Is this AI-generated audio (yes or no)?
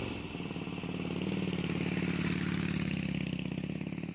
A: no